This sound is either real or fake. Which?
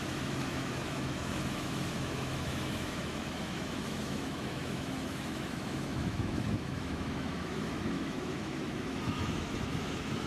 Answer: fake